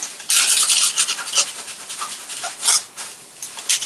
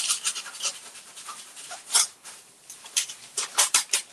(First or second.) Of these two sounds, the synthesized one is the second